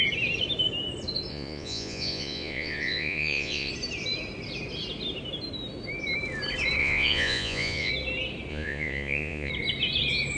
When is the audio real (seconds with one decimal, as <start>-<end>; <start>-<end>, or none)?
0.0-1.3; 3.7-6.8; 7.9-8.5; 9.5-10.4